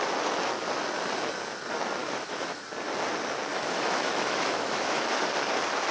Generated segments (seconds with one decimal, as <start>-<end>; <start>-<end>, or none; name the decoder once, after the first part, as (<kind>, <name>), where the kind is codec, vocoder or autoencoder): 2.0-2.6 (autoencoder, DAC-VAE); 3.5-5.3